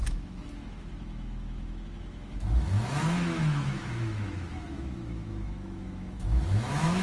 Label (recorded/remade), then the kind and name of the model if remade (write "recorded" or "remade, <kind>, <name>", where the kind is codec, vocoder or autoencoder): remade, autoencoder, DAC-VAE